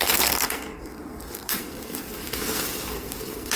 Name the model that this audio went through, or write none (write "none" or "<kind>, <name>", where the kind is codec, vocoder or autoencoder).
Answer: codec, SNAC